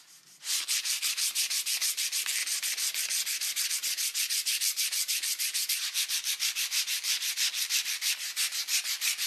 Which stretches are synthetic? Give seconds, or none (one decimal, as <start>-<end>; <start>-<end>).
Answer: 0.0-2.4; 3.7-9.3